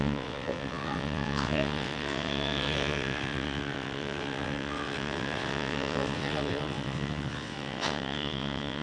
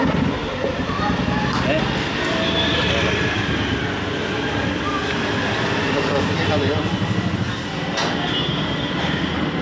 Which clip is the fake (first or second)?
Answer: first